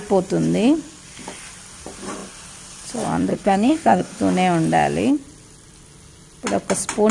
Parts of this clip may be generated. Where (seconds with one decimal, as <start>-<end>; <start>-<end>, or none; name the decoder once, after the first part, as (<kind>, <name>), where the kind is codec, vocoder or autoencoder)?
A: 3.3-4.2 (codec, SNAC)